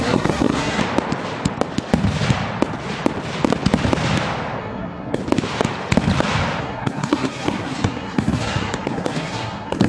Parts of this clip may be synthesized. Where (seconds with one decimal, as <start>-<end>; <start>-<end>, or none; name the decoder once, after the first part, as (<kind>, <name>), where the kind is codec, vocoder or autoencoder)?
0.0-0.8 (codec, SNAC); 4.6-5.2; 6.6-9.9